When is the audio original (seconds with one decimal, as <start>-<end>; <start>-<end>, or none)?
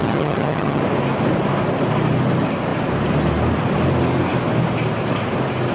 0.8-5.7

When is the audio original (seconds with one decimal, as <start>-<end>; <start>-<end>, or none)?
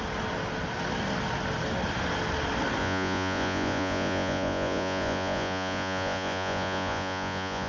0.0-2.8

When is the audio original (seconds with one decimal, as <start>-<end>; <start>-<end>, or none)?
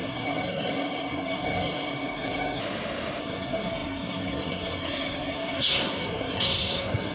2.6-3.2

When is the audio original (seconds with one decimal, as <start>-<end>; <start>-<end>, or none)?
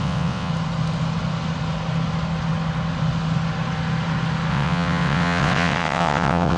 0.5-4.5